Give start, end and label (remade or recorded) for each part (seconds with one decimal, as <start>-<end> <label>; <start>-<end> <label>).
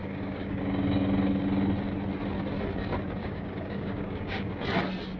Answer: 0.0-0.6 remade; 0.6-3.2 recorded; 3.2-4.5 remade; 4.5-5.2 recorded